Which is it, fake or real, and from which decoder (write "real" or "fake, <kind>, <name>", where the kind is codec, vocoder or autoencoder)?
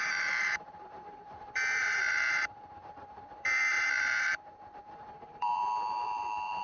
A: fake, vocoder, BigVGAN v2